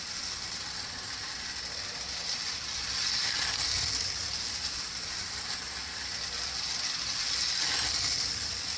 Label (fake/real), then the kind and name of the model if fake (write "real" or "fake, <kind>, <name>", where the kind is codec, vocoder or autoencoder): real